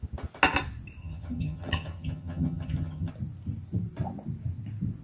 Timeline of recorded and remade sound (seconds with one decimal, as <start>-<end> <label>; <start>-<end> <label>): 0.0-1.0 recorded; 1.0-3.1 remade; 3.1-5.0 recorded